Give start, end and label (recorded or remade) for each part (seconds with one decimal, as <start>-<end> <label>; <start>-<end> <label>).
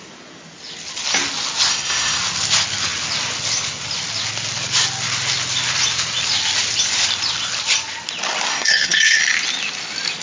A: 0.0-1.7 recorded; 1.7-2.2 remade; 2.2-8.5 recorded; 8.5-9.2 remade; 9.2-10.2 recorded